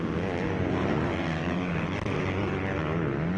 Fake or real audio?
real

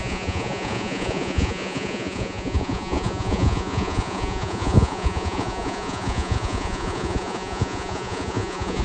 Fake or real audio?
fake